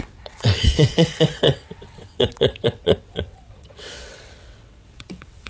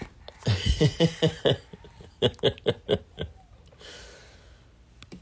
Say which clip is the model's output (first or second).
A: first